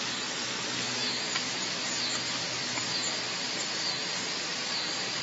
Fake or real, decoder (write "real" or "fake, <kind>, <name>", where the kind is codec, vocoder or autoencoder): real